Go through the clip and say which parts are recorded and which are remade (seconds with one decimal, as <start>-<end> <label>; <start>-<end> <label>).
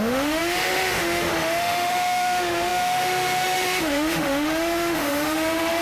0.0-5.8 remade